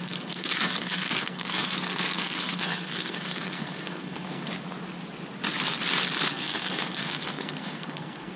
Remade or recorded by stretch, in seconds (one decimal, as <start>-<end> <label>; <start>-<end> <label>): 0.0-4.5 remade; 4.5-6.3 recorded; 6.3-8.4 remade